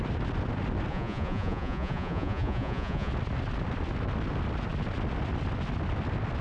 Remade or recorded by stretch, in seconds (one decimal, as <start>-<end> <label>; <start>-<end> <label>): 0.0-0.9 recorded; 0.9-3.1 remade; 3.1-6.4 recorded